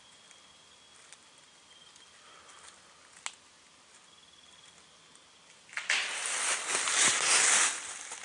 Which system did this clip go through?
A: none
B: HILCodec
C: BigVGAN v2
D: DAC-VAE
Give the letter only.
A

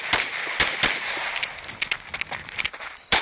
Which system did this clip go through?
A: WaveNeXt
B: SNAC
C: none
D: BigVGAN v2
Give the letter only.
C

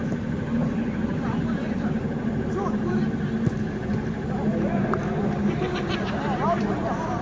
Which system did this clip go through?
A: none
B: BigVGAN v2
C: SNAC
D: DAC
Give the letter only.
B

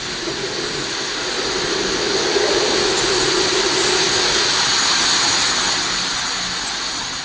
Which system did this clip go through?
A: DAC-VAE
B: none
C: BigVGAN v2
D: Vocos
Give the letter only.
B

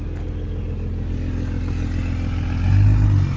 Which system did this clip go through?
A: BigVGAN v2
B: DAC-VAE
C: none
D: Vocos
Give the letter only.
C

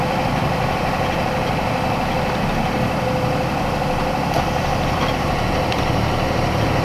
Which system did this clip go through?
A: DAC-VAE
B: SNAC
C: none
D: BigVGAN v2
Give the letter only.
D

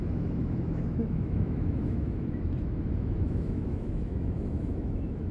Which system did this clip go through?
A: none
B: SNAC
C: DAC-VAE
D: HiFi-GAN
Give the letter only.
C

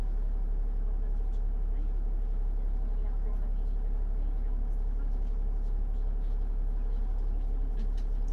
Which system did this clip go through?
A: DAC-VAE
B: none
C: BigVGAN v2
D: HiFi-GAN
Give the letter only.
B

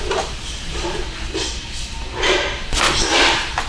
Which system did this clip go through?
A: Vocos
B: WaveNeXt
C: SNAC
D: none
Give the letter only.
D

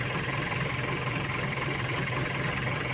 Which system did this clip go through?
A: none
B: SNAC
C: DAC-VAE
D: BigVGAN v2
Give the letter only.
D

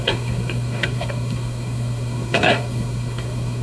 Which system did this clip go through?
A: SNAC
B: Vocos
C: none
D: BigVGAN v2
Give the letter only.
A